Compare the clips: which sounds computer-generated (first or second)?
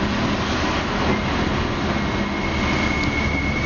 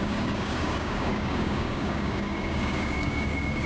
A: second